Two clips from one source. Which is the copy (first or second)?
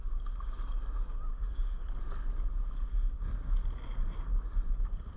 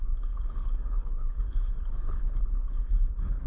second